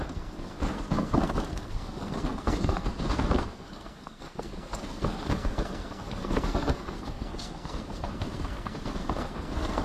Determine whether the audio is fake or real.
fake